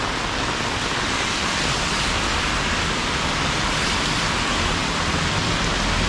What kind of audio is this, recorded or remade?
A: recorded